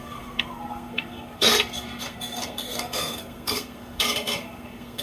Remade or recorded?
remade